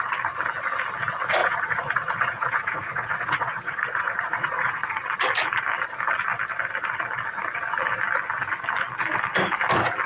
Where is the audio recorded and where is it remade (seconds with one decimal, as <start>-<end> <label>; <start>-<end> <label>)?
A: 0.0-1.4 recorded; 1.4-4.9 remade; 4.9-10.1 recorded